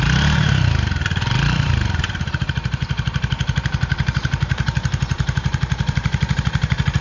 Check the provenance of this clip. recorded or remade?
remade